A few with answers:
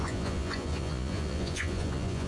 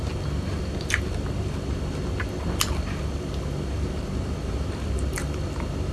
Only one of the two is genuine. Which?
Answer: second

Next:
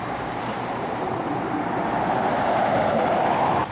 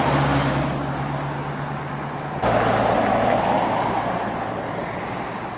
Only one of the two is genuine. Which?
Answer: second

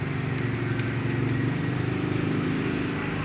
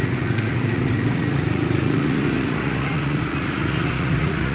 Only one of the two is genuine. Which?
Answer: first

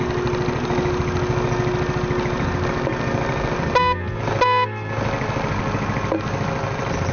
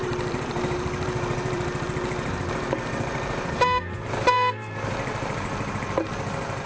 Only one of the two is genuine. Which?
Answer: first